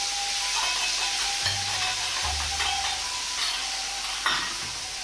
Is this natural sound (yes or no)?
yes